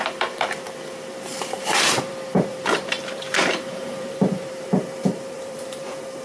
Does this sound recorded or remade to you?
remade